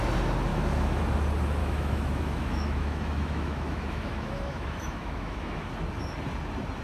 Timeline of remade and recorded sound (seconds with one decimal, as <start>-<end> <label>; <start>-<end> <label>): 0.0-0.5 recorded; 0.5-1.0 remade; 1.0-1.6 recorded; 1.6-5.7 remade; 5.7-6.8 recorded